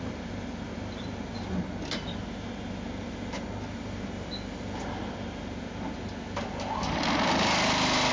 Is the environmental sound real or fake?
real